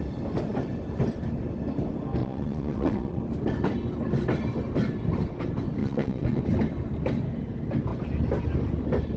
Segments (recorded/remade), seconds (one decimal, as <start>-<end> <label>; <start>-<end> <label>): 0.0-2.2 recorded; 2.2-3.2 remade; 3.2-5.8 recorded; 5.8-6.4 remade; 6.4-9.2 recorded